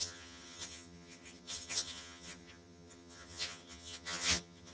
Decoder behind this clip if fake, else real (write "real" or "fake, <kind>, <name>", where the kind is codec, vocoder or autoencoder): fake, vocoder, HiFi-GAN